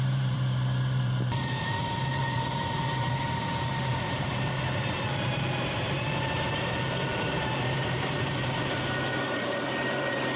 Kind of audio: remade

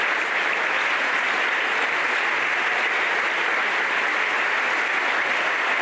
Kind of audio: recorded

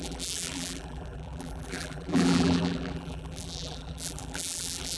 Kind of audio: remade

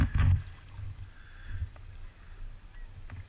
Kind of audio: recorded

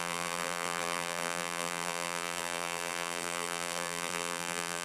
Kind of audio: remade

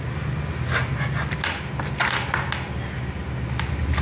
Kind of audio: recorded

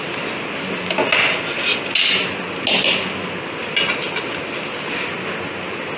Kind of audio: recorded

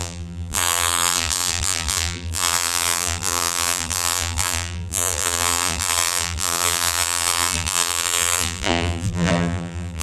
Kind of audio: remade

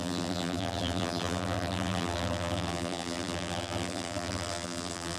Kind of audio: remade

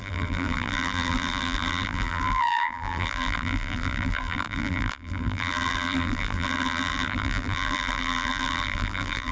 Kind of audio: remade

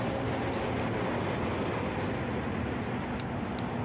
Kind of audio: recorded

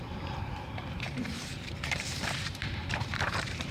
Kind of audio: remade